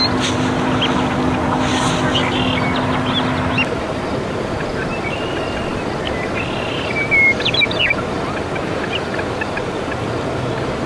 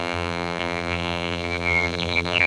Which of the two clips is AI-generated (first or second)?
second